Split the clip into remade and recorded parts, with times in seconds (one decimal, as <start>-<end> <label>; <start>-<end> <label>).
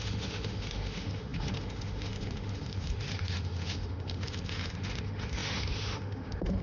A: 0.0-6.6 remade